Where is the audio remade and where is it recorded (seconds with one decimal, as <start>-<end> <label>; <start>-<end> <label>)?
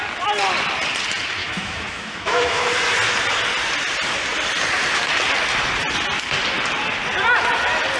0.0-1.4 recorded; 1.4-2.7 remade; 2.7-8.0 recorded